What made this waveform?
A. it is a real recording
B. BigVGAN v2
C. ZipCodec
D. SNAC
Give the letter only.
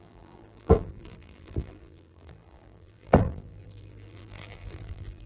B